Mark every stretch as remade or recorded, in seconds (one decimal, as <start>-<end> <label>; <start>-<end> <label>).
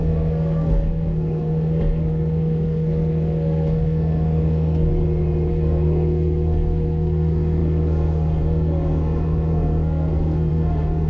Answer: 0.0-4.9 remade; 4.9-5.5 recorded; 5.5-11.1 remade